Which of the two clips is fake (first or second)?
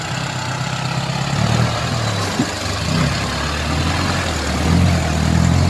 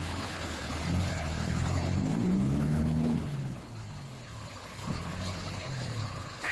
second